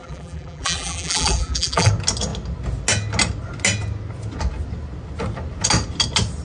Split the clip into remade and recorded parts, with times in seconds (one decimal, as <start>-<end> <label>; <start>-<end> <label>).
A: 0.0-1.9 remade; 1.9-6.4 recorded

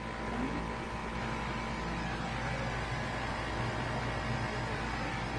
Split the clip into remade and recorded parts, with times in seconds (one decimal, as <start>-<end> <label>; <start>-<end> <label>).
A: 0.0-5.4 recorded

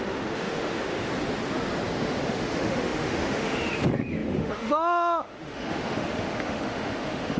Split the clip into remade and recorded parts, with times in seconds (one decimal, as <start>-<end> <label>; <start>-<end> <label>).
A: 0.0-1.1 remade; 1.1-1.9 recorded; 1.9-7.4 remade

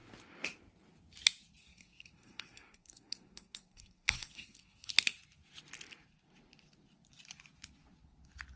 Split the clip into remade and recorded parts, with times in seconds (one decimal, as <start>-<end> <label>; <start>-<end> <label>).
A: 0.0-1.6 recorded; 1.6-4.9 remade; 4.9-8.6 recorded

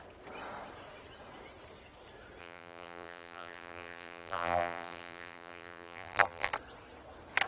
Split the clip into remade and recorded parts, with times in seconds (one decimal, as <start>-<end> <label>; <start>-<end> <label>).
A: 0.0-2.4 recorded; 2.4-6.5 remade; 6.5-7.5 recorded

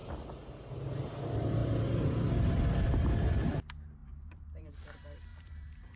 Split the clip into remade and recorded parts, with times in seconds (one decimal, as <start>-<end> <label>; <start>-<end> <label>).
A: 0.0-4.0 recorded; 4.0-4.7 remade; 4.7-5.3 recorded; 5.3-6.0 remade